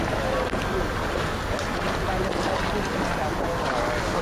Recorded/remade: recorded